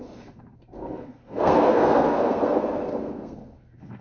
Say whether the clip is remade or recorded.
remade